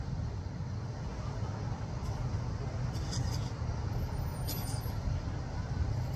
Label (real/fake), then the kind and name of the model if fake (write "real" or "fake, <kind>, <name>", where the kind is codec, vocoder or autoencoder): real